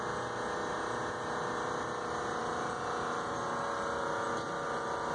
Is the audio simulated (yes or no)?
no